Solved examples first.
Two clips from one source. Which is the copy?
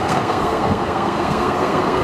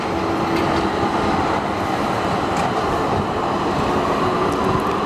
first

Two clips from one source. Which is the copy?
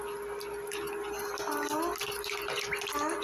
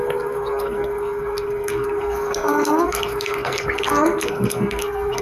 second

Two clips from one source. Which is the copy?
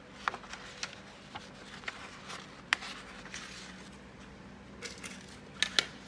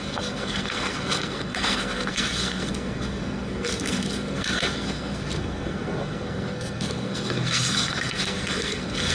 second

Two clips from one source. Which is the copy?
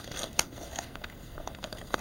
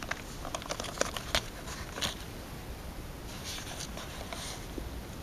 first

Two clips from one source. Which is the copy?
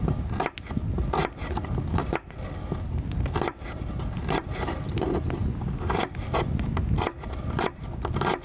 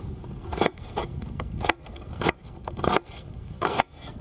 second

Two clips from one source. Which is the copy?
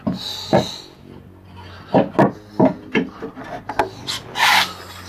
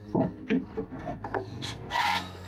second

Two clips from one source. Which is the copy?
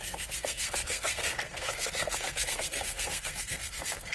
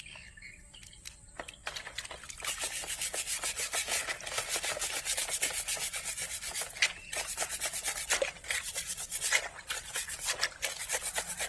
first